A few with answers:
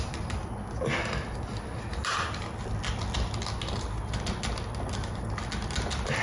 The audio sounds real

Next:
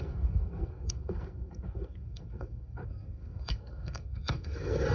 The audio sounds fake